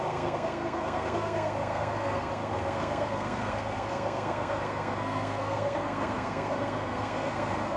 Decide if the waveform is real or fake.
fake